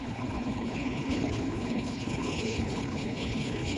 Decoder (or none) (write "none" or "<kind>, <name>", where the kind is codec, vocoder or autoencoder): codec, HILCodec